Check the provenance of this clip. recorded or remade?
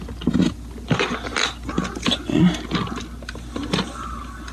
recorded